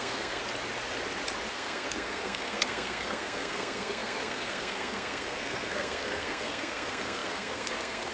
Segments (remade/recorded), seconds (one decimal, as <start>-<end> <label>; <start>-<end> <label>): 0.0-0.4 remade; 0.4-1.5 recorded; 1.5-8.1 remade